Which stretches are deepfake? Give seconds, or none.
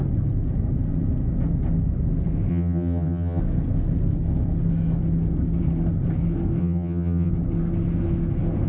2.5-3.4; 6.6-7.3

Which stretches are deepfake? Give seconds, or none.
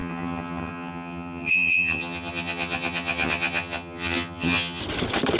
0.0-4.8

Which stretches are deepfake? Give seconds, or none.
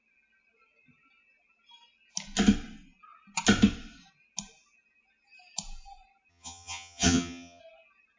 6.3-7.6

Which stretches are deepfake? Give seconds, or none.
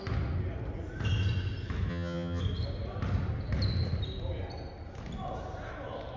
1.9-2.4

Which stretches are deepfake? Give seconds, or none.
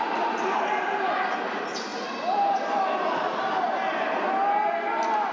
none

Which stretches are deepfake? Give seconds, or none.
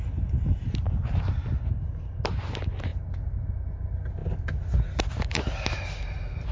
none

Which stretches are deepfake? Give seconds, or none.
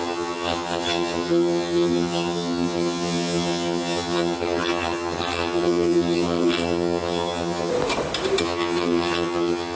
0.0-7.7; 8.4-9.8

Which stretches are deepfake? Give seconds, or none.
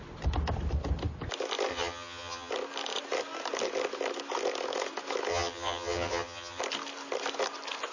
1.7-2.5; 5.3-6.6